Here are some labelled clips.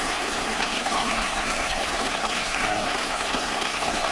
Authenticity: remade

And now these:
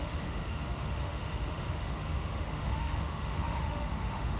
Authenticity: remade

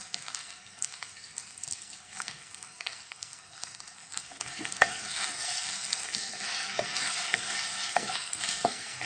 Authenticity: remade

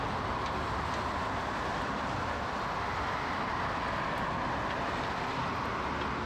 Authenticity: recorded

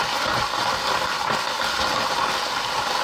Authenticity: recorded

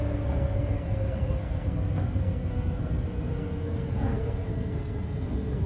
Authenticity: remade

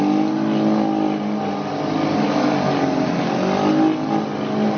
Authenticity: recorded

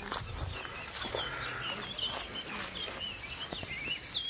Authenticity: recorded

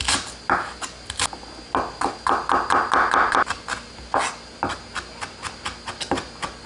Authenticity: recorded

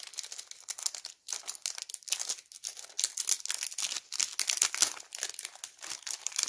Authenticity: recorded